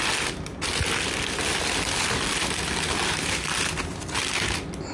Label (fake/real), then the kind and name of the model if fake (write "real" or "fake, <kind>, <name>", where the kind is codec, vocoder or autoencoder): real